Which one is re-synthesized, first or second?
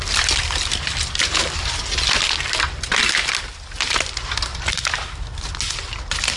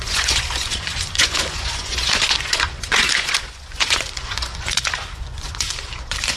second